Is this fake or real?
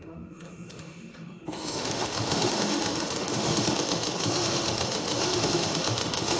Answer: fake